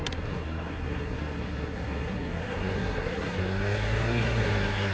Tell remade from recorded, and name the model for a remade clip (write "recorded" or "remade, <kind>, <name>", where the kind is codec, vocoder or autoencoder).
remade, codec, SNAC